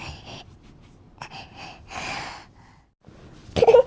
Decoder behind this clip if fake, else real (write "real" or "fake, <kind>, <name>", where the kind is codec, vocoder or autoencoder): real